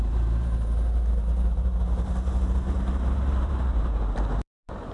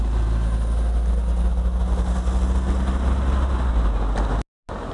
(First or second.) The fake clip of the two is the first